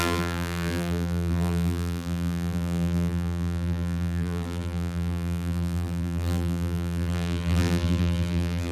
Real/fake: fake